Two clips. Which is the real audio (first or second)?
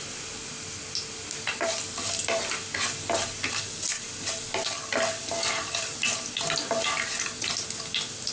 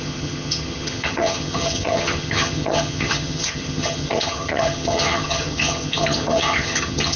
first